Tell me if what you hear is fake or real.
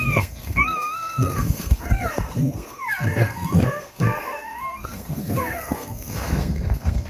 fake